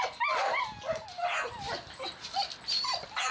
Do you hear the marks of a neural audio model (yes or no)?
no